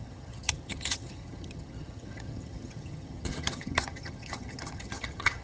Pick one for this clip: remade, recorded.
remade